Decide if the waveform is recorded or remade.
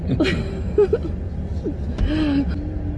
recorded